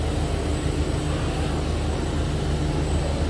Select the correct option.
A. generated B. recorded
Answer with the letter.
B